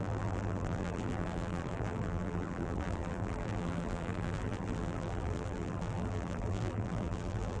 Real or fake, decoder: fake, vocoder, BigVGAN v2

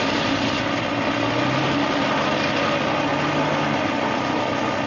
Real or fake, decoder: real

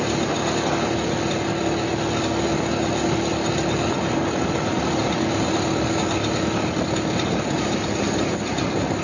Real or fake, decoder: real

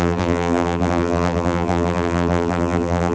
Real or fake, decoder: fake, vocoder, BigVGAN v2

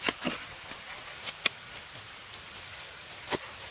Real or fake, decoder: real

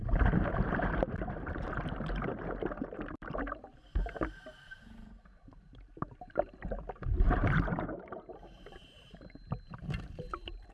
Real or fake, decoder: fake, vocoder, BigVGAN v2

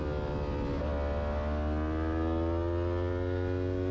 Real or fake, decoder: real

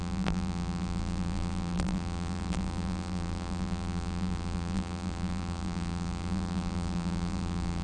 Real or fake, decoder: fake, vocoder, BigVGAN v2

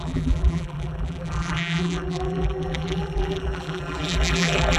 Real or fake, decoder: fake, vocoder, BigVGAN v2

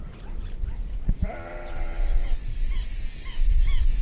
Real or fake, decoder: real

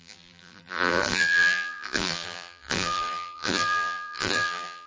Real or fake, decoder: fake, vocoder, BigVGAN v2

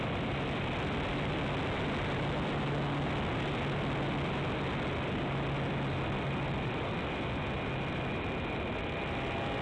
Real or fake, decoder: real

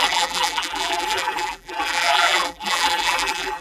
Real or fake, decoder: fake, vocoder, BigVGAN v2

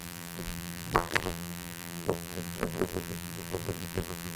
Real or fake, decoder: fake, vocoder, BigVGAN v2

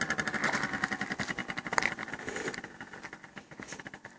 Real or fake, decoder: real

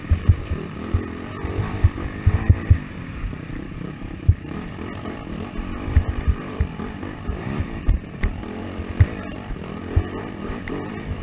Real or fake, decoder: fake, vocoder, BigVGAN v2